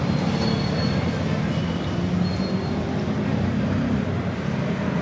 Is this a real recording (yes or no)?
yes